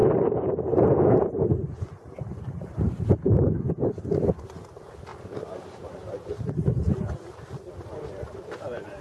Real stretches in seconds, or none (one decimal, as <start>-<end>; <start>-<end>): 1.3-5.1